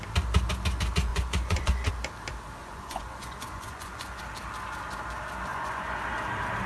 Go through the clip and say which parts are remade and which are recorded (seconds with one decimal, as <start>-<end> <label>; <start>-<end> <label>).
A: 0.0-1.1 recorded; 1.1-1.9 remade; 1.9-2.6 recorded; 2.6-4.2 remade; 4.2-5.5 recorded; 5.5-6.0 remade; 6.0-6.7 recorded